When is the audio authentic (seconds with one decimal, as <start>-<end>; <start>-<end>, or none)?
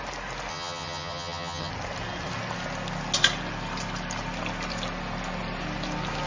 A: 0.0-0.5; 1.7-6.3